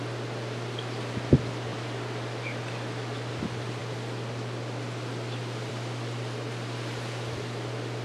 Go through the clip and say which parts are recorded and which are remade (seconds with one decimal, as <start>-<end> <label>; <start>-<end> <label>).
0.0-8.0 recorded